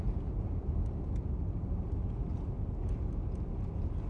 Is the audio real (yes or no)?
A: yes